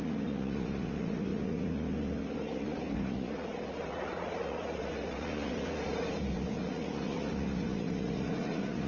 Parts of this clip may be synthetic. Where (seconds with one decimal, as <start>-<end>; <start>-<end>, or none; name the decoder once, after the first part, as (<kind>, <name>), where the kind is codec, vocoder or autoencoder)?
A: 0.0-8.9 (vocoder, Vocos)